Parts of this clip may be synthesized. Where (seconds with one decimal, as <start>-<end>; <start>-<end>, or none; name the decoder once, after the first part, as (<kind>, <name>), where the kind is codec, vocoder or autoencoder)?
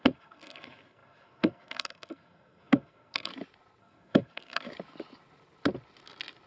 0.0-3.3 (codec, SNAC); 3.8-4.7